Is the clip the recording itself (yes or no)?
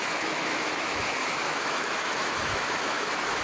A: no